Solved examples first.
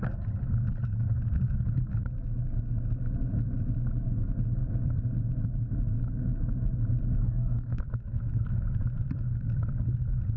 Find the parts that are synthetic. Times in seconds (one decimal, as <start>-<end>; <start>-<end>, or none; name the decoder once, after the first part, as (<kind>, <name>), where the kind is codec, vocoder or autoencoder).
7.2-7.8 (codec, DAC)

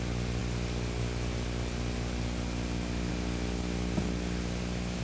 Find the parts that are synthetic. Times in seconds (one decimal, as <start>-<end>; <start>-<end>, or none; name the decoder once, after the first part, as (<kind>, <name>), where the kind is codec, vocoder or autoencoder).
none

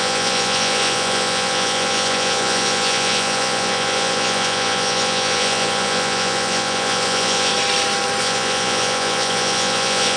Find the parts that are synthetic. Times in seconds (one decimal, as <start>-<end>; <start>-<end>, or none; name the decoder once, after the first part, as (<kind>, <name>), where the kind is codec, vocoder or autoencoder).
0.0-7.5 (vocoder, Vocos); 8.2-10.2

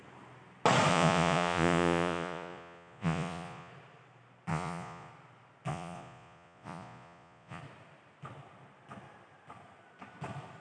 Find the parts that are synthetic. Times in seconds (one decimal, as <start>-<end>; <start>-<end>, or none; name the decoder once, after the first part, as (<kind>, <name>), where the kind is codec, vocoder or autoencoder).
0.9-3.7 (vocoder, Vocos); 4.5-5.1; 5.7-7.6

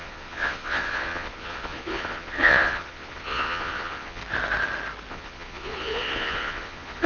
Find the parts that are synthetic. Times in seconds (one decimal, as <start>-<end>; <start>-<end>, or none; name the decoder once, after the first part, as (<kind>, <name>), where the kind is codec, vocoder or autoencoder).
0.0-4.2 (vocoder, Vocos); 5.1-7.1

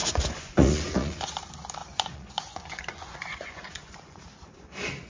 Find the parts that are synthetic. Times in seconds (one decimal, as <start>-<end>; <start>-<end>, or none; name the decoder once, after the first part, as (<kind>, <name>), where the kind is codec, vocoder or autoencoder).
0.0-1.3 (vocoder, Vocos); 1.8-4.2